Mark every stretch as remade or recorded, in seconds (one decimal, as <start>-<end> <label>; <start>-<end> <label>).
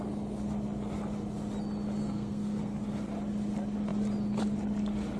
0.0-2.0 recorded; 2.0-2.7 remade; 2.7-5.2 recorded